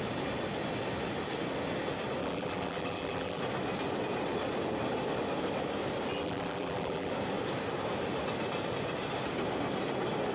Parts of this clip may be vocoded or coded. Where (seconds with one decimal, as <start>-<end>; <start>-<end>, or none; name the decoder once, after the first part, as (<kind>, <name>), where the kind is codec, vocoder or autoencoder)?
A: 2.2-3.4 (vocoder, BigVGAN v2); 6.1-7.1